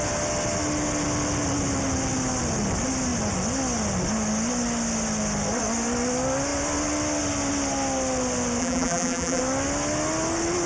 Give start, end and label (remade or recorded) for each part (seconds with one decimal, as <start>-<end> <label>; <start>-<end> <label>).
0.0-8.6 recorded; 8.6-9.4 remade; 9.4-10.7 recorded